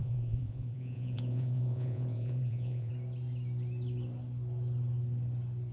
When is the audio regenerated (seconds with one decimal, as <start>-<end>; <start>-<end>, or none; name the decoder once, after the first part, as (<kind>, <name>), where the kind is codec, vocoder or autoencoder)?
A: 0.0-2.9 (vocoder, Vocos)